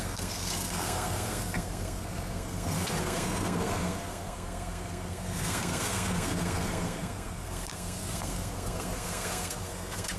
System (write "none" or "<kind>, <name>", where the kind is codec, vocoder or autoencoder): codec, SNAC